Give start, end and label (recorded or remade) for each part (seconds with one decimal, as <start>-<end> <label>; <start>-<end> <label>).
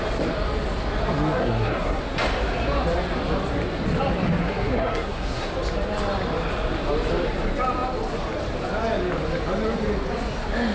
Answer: 0.0-1.4 recorded; 1.4-2.0 remade; 2.0-4.4 recorded; 4.4-5.5 remade; 5.5-10.7 recorded